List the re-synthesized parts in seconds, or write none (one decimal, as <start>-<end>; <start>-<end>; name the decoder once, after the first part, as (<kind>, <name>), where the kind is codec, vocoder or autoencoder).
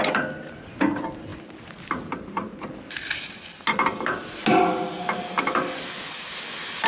none